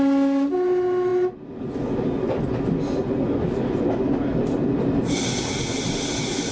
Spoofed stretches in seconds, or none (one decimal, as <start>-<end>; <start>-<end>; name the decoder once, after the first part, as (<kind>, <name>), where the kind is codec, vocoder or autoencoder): none